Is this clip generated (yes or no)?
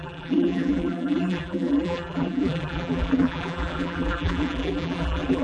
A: yes